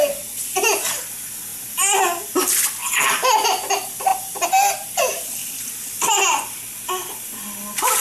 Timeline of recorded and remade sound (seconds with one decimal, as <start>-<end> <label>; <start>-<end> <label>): 0.0-8.0 recorded